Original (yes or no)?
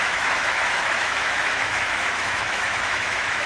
no